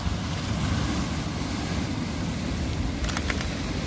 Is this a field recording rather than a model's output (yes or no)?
yes